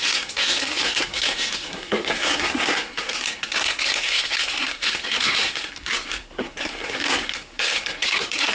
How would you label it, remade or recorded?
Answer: remade